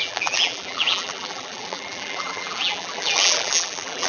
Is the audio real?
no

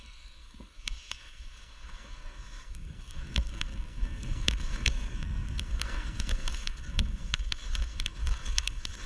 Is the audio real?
no